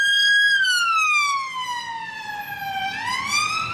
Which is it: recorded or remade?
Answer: recorded